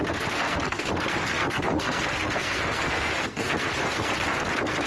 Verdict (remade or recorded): remade